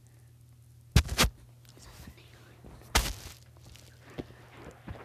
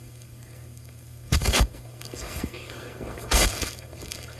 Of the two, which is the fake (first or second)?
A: second